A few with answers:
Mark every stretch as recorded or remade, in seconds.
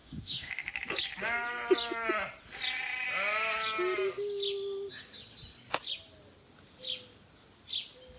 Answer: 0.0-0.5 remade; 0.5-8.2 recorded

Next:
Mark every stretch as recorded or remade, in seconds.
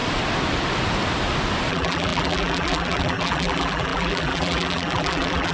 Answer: 0.0-1.7 recorded; 1.7-5.5 remade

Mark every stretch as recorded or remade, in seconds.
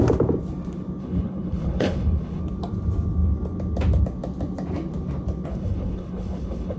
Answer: 0.0-1.0 recorded; 1.0-2.4 remade; 2.4-5.5 recorded; 5.5-6.8 remade